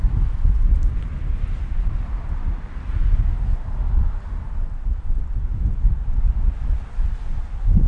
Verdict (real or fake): real